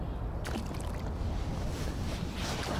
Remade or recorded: recorded